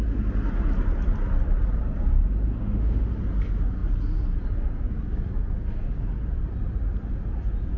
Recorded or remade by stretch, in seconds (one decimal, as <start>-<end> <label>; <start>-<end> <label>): 0.0-2.6 recorded; 2.6-3.1 remade; 3.1-7.8 recorded